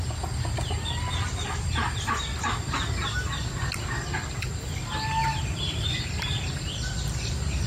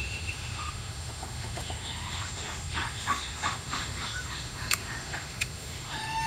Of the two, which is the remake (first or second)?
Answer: second